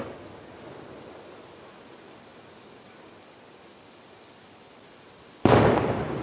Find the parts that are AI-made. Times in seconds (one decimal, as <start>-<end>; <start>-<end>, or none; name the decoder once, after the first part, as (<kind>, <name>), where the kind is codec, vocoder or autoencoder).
none